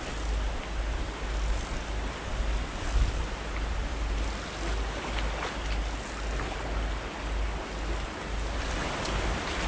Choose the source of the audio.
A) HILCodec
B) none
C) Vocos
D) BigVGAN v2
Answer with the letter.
B